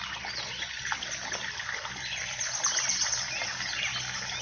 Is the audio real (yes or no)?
yes